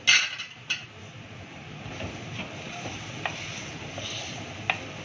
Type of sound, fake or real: real